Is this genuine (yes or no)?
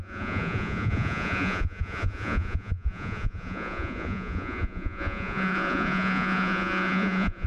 no